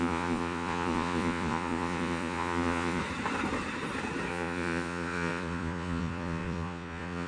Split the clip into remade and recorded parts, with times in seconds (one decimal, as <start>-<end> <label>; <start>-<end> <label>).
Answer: 0.0-3.0 remade; 3.0-4.3 recorded; 4.3-7.3 remade